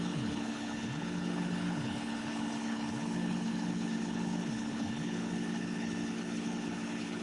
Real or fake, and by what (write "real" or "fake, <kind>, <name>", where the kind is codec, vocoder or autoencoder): fake, codec, HILCodec